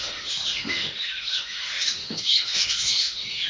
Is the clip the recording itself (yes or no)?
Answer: no